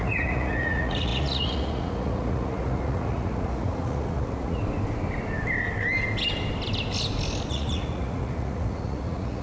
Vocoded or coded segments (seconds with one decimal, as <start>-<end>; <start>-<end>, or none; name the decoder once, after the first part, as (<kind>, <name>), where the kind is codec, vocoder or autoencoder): 0.0-4.6 (vocoder, Vocos); 7.5-9.4